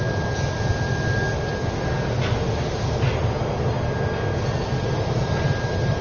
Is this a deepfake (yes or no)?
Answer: no